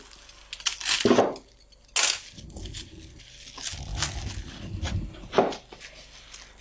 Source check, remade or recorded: recorded